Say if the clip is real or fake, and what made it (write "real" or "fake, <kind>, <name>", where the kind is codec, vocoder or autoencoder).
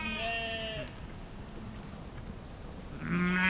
real